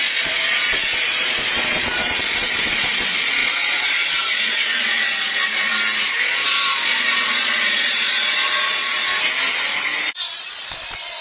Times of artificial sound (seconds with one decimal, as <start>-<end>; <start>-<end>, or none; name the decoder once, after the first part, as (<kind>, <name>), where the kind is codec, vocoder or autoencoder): 0.0-5.7 (vocoder, Vocos); 6.2-9.1; 10.1-11.2